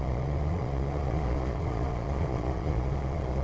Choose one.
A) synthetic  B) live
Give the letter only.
A